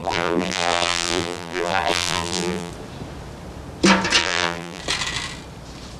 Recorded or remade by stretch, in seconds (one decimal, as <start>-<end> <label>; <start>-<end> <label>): 0.0-2.7 remade; 2.7-4.2 recorded; 4.2-4.8 remade; 4.8-6.0 recorded